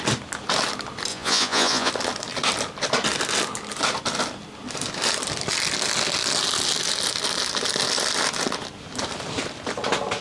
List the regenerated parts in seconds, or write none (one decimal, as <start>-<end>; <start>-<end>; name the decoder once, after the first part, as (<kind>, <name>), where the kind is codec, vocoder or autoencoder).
1.1-1.9 (vocoder, Vocos)